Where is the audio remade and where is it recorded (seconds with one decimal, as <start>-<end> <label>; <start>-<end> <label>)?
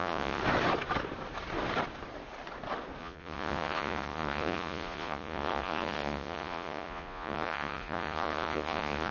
0.0-0.4 remade; 0.4-3.0 recorded; 3.0-9.1 remade